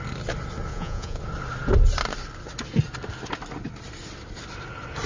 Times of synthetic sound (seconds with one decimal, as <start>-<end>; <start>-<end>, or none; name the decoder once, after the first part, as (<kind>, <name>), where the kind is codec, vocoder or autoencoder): 0.7-1.2 (vocoder, Vocos)